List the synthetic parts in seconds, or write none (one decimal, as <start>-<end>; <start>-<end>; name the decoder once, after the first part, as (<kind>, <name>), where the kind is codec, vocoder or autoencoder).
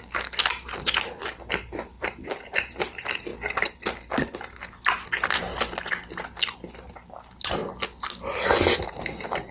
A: 0.0-3.3 (vocoder, BigVGAN v2); 5.1-5.5; 6.9-7.6; 8.8-9.5